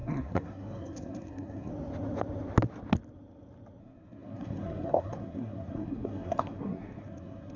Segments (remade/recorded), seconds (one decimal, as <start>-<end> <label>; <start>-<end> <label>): 0.0-1.7 remade; 1.7-3.8 recorded; 3.8-7.6 remade